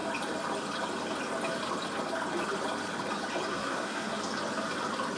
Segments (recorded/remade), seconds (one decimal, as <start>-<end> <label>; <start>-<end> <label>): 0.0-3.5 recorded; 3.5-4.2 remade; 4.2-5.2 recorded